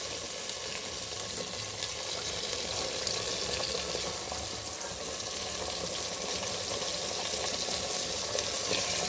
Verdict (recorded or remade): recorded